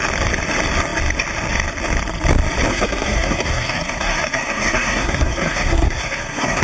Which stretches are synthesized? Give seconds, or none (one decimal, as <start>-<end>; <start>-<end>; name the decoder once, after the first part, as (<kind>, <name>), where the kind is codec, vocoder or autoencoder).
2.7-6.6 (codec, SNAC)